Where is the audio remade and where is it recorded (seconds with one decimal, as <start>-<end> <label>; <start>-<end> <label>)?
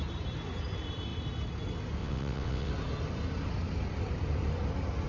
0.0-2.0 recorded; 2.0-2.7 remade; 2.7-5.1 recorded